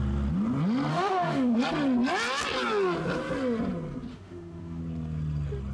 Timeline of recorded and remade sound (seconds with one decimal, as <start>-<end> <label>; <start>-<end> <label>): 0.0-0.9 recorded; 0.9-1.6 remade; 1.6-4.1 recorded; 4.1-4.8 remade; 4.8-5.7 recorded